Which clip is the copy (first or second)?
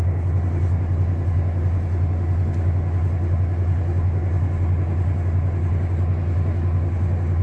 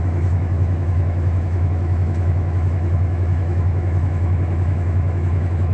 second